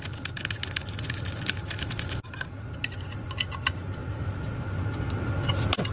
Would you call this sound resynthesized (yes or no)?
no